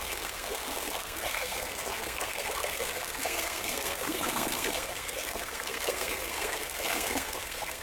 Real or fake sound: fake